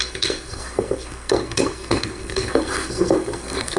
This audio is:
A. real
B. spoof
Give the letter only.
B